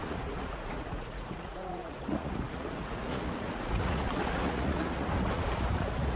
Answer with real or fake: fake